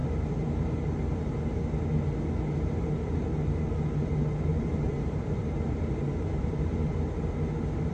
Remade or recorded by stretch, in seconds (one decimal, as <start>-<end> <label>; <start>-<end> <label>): 0.0-4.5 recorded; 4.5-6.9 remade; 6.9-7.9 recorded